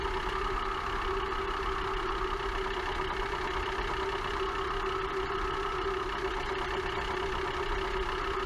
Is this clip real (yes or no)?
yes